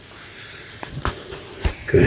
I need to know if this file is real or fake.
fake